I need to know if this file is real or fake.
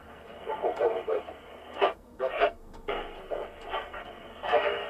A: fake